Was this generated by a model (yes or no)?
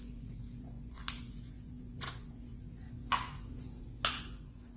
yes